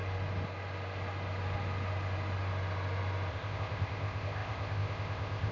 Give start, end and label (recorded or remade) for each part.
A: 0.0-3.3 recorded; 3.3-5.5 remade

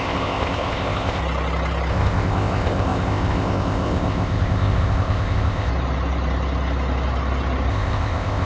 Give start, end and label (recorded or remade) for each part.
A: 0.0-1.2 remade; 1.2-1.9 recorded; 1.9-5.7 remade; 5.7-7.7 recorded; 7.7-8.5 remade

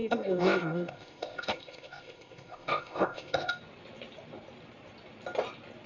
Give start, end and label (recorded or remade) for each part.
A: 0.0-3.5 remade; 3.5-5.9 recorded

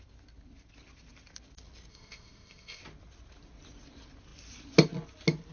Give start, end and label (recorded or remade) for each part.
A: 0.0-1.9 recorded; 1.9-2.8 remade; 2.8-5.5 recorded

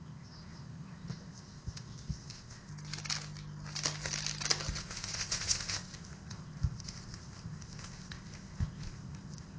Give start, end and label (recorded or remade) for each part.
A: 0.0-2.7 remade; 2.7-4.8 recorded; 4.8-9.6 remade